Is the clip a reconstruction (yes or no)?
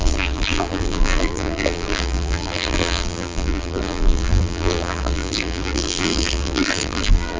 yes